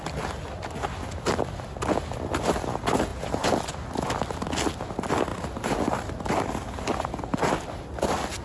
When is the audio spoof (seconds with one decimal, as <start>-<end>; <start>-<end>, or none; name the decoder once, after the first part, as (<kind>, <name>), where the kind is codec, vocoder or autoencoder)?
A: none